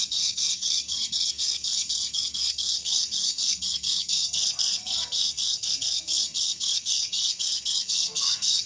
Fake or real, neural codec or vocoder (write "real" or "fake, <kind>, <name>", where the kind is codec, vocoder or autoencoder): fake, codec, SNAC